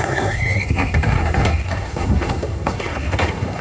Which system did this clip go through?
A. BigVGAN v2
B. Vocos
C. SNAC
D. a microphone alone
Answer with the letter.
C